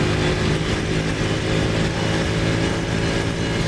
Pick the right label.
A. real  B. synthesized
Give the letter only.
A